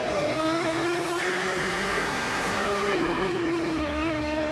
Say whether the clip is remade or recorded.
remade